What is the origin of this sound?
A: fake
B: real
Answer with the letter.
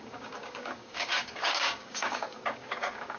A